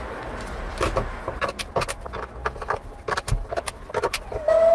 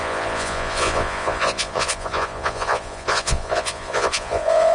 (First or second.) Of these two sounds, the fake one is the second